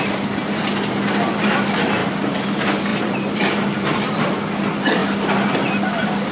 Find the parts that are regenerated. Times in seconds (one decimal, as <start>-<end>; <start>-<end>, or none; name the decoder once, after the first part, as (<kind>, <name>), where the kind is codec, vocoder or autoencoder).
2.0-2.5 (vocoder, BigVGAN v2); 2.9-4.3